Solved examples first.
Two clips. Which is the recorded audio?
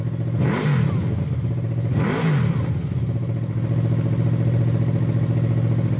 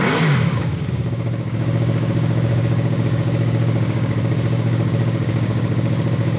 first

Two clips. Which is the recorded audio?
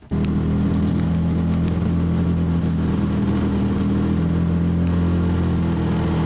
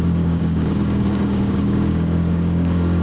first